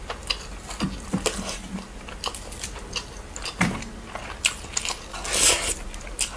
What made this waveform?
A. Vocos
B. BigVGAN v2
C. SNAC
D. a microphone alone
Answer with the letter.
D